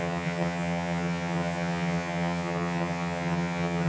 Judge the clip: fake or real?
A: fake